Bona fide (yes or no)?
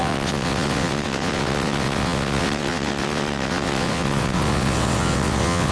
no